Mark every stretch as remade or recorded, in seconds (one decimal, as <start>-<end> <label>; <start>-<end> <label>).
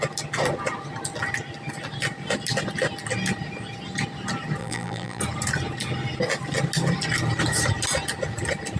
0.0-4.6 recorded; 4.6-5.2 remade; 5.2-8.8 recorded